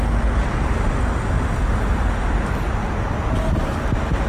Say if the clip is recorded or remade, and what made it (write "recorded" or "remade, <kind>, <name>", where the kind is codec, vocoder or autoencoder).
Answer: recorded